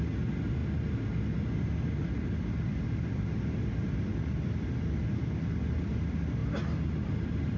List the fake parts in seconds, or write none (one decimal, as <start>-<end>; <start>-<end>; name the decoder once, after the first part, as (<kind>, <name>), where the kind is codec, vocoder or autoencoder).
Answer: none